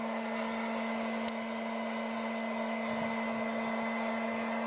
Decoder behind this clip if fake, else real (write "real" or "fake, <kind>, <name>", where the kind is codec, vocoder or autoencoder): real